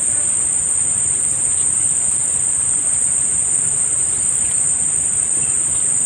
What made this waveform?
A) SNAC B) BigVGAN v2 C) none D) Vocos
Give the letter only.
C